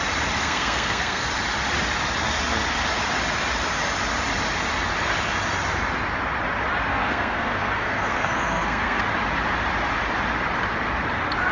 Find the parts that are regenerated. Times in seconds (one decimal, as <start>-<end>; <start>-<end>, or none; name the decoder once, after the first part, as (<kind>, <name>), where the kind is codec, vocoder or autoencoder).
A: 0.4-1.2 (codec, SNAC); 6.9-9.0